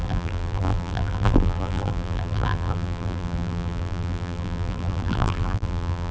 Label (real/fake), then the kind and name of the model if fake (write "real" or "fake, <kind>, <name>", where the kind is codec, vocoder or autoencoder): fake, vocoder, BigVGAN v2